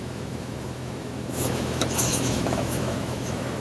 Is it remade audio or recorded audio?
remade